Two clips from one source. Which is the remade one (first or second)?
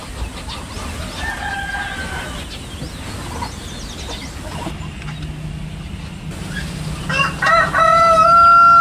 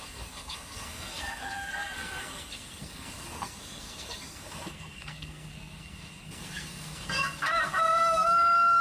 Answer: second